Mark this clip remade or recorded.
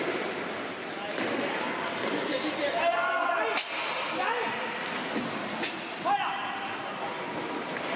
recorded